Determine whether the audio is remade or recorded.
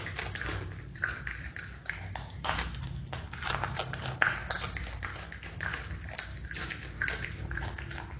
recorded